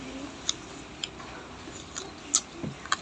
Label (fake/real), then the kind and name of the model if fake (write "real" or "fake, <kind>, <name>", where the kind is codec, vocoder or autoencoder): real